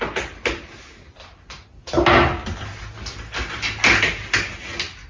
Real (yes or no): yes